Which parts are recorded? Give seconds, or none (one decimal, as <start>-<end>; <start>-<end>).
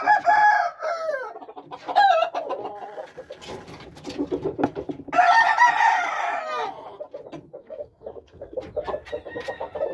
0.0-7.6; 8.6-9.9